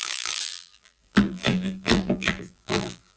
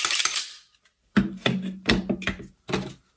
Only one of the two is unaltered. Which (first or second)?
second